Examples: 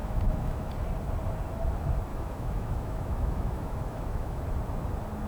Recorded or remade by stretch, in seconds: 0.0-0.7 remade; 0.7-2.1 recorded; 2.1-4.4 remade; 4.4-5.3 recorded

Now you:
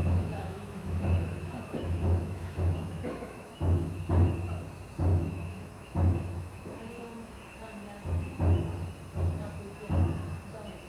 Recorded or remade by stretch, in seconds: 0.0-4.0 remade; 4.0-5.1 recorded; 5.1-7.4 remade; 7.4-10.9 recorded